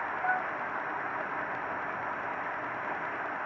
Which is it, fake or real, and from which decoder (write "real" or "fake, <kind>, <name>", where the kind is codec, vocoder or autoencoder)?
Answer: real